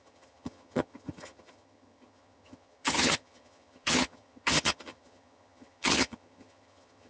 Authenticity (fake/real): fake